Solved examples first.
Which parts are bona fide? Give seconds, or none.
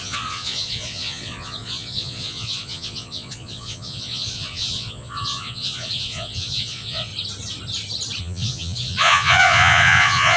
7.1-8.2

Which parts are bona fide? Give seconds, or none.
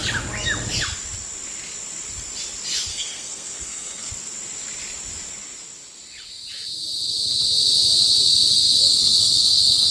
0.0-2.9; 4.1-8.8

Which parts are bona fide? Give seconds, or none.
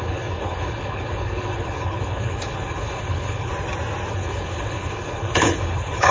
3.5-4.1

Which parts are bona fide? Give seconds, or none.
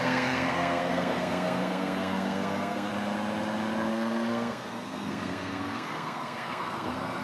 2.9-3.9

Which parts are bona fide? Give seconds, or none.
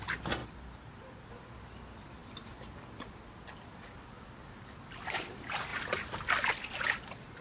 0.0-7.4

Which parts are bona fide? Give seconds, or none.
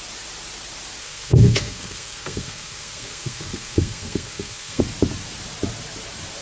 0.0-1.0; 4.8-6.4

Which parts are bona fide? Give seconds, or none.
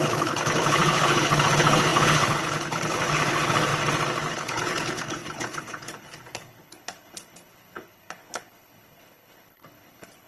3.7-4.3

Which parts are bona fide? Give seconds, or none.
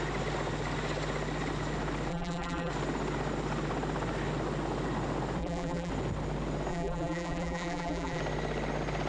0.0-2.1; 2.7-5.4; 5.9-6.7; 8.2-9.1